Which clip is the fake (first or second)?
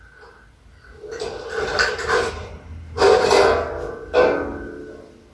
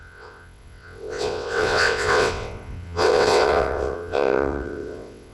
second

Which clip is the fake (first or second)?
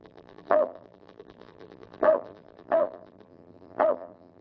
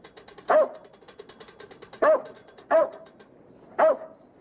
first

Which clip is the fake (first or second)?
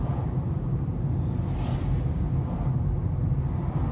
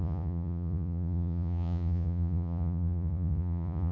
second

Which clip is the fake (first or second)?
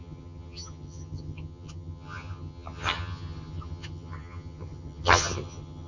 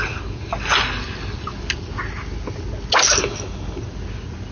first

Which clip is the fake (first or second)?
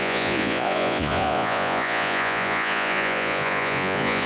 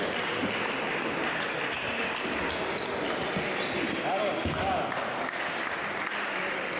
first